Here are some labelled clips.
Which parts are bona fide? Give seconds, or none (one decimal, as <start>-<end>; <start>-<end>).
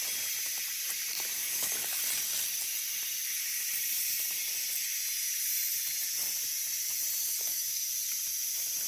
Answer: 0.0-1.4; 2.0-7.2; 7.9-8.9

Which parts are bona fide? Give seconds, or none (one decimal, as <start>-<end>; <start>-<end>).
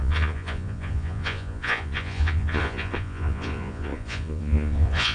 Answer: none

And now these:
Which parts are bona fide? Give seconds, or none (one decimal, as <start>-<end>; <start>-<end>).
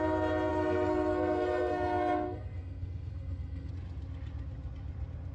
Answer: 0.0-0.5; 3.7-5.3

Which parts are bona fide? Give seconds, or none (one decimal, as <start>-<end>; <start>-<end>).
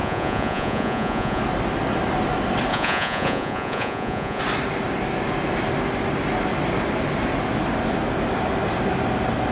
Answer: 1.4-2.7; 4.4-9.5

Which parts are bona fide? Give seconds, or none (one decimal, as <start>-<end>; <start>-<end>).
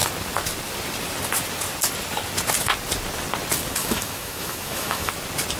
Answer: 0.0-3.8; 5.1-5.6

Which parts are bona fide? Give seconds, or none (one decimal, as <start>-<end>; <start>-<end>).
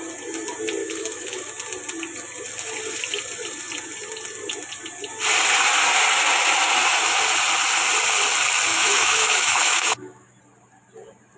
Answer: 0.0-0.8; 1.5-8.7; 10.4-11.4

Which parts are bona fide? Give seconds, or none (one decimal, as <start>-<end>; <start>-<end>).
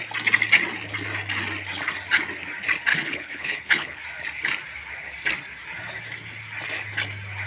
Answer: 0.0-2.9; 4.0-7.5